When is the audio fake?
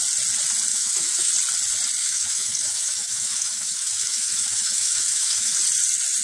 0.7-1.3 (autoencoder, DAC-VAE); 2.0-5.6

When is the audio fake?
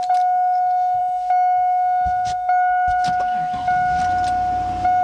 1.0-4.0 (autoencoder, DAC-VAE)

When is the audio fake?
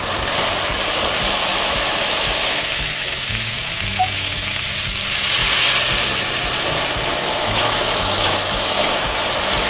1.5-4.8 (autoencoder, DAC-VAE); 7.1-9.2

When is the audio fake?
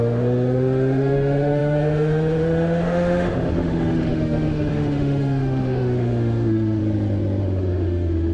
0.0-6.8 (autoencoder, DAC-VAE); 7.4-8.3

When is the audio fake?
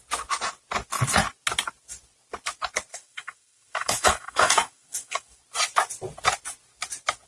2.9-5.4 (autoencoder, DAC-VAE)